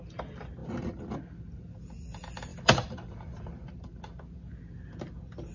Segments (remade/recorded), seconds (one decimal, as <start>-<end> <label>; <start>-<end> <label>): 0.0-0.6 recorded; 0.6-1.2 remade; 1.2-2.5 recorded; 2.5-3.5 remade; 3.5-5.5 recorded